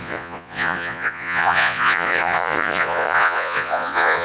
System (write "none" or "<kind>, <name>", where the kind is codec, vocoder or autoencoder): vocoder, Vocos